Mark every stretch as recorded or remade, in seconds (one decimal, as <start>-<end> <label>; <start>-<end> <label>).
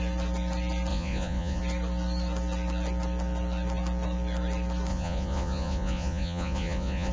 0.0-0.9 recorded; 0.9-1.6 remade; 1.6-4.9 recorded; 4.9-7.1 remade